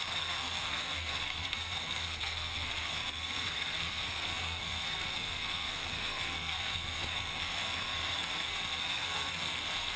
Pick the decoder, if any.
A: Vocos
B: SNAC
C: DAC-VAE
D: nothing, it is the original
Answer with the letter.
B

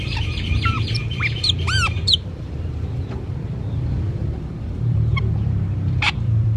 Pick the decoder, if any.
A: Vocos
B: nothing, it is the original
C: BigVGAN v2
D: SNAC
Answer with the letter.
C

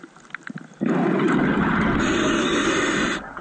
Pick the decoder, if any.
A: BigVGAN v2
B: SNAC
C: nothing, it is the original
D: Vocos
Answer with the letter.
C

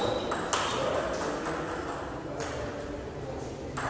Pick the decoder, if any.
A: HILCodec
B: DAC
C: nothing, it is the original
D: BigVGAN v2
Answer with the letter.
C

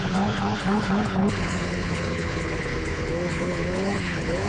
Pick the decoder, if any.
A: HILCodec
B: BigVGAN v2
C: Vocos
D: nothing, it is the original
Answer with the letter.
A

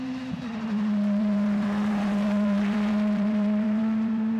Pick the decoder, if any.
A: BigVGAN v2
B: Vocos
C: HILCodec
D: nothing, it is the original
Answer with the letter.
A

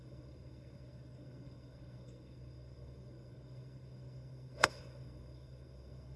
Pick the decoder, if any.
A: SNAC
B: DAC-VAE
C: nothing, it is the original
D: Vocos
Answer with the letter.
A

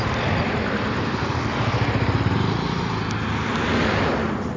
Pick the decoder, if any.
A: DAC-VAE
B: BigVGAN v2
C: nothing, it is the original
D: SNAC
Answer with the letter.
C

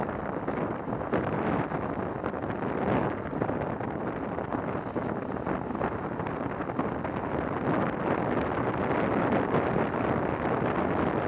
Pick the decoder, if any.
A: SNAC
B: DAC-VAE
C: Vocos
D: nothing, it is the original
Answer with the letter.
D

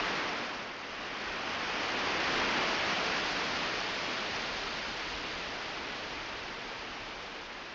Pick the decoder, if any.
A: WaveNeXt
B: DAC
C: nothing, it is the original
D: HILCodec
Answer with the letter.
C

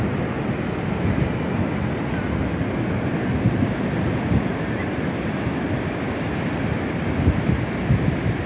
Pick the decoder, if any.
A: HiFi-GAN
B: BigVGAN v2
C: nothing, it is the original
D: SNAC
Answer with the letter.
C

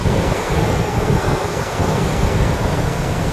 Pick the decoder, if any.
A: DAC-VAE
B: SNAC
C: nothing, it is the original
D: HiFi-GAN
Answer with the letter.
B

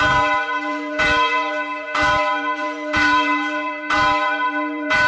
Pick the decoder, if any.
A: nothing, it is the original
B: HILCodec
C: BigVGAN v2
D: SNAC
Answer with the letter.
C